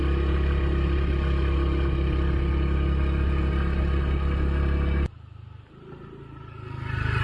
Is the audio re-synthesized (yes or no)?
no